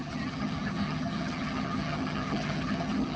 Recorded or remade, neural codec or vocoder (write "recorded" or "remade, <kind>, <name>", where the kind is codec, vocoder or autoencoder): remade, vocoder, HiFi-GAN